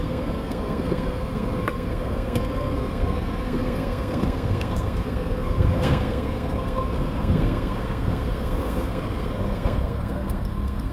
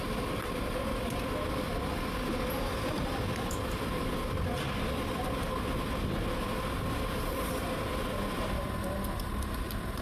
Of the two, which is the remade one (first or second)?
first